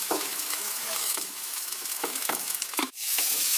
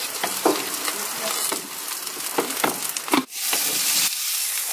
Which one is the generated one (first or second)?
first